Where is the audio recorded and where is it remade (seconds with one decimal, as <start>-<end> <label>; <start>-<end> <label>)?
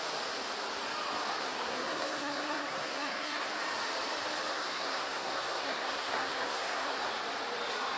0.0-1.4 recorded; 1.4-3.5 remade; 3.5-4.5 recorded; 4.5-7.1 remade; 7.1-8.0 recorded